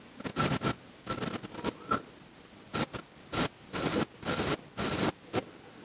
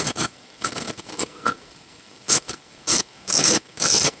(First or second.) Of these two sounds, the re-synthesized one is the second